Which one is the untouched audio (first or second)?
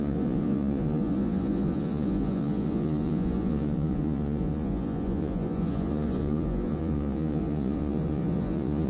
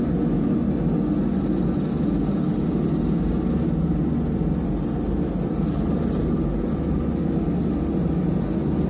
second